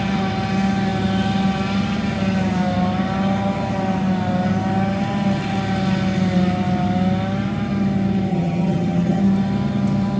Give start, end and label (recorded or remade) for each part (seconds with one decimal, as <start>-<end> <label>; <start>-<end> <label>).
0.0-8.3 recorded; 8.3-9.2 remade; 9.2-10.2 recorded